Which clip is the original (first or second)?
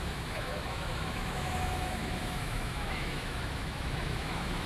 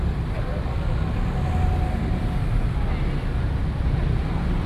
second